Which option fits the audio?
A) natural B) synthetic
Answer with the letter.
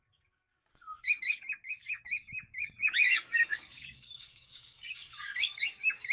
B